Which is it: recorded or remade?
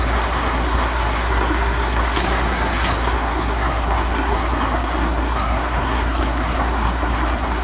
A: remade